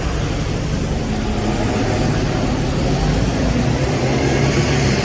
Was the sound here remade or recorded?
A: recorded